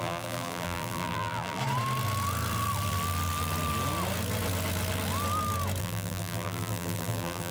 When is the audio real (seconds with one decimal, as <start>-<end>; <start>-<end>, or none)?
1.6-5.8

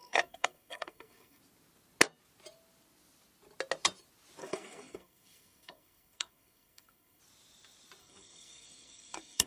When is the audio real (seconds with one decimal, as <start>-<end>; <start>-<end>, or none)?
1.4-4.4; 7.2-8.0